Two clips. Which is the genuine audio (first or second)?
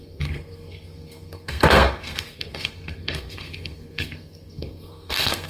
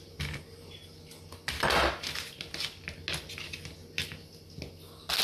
second